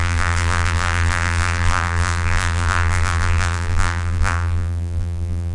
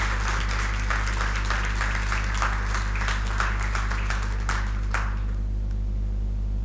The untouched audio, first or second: second